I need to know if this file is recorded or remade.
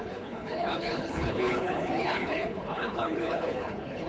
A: remade